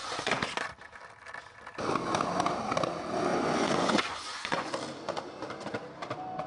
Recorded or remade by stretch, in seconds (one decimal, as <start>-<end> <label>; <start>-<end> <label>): 0.0-0.5 remade; 0.5-3.3 recorded; 3.3-4.7 remade; 4.7-6.5 recorded